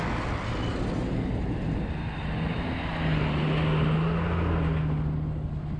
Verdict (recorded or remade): recorded